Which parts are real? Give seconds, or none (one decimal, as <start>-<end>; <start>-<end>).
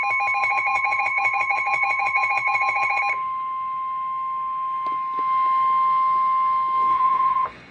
0.0-0.4; 3.0-6.9